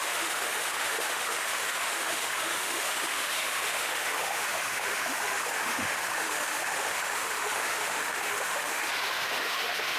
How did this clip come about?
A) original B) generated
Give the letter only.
B